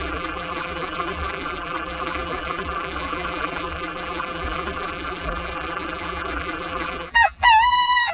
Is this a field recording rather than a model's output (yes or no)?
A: no